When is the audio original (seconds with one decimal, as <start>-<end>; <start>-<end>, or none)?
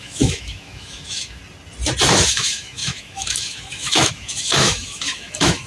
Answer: 1.4-2.3